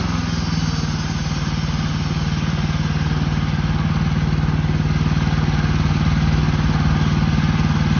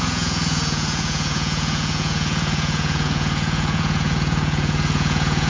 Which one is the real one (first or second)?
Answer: first